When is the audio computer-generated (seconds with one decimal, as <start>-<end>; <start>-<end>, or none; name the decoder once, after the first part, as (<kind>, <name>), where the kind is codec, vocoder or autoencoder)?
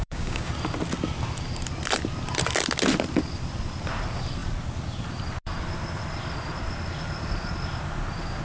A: 0.0-0.5 (codec, DAC)